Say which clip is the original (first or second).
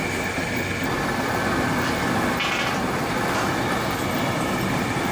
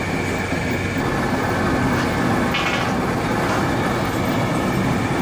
second